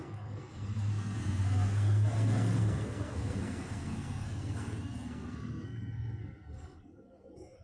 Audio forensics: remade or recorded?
remade